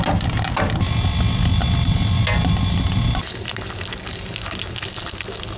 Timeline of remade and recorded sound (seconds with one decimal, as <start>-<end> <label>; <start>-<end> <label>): 0.0-5.6 recorded